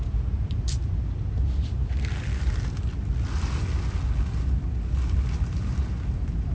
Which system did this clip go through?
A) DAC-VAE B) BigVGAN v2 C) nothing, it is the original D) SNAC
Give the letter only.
C